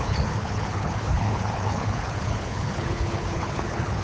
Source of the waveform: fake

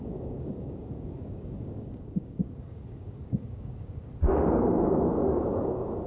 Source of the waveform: fake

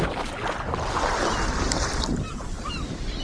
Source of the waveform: real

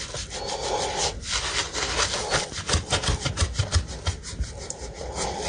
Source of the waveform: real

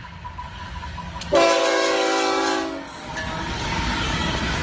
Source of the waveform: fake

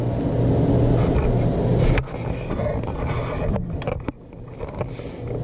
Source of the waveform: real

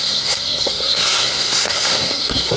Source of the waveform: fake